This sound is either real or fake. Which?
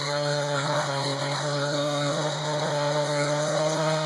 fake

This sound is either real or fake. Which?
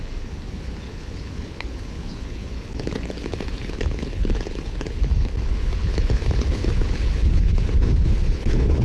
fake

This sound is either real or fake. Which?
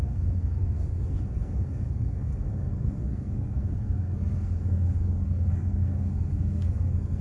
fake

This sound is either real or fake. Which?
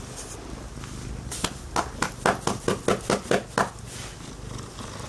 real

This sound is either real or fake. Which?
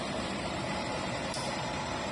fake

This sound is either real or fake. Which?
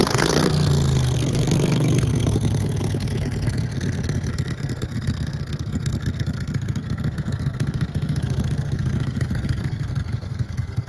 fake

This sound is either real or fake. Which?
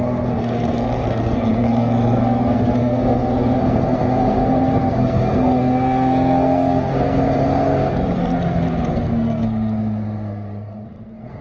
fake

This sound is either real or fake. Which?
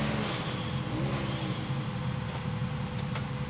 real